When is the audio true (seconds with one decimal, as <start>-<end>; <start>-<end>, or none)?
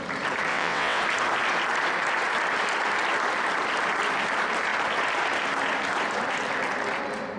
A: 0.0-0.5; 1.0-7.4